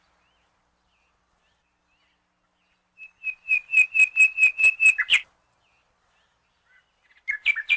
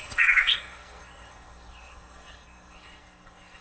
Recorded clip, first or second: first